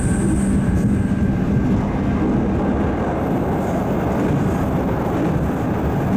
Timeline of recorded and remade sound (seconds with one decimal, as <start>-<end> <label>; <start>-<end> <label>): 0.0-6.2 recorded